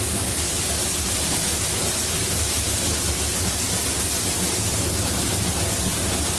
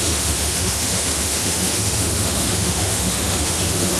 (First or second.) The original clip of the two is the first